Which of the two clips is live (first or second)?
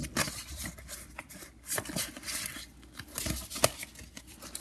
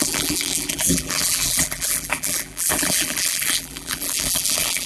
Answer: first